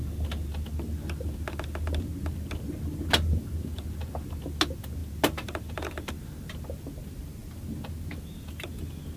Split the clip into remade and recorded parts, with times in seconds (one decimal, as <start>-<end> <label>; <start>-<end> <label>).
0.0-9.2 recorded